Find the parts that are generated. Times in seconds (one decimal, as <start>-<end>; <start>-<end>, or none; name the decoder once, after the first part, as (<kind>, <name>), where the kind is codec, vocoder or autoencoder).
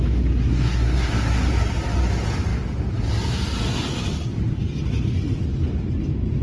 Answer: 0.5-1.5 (codec, SNAC)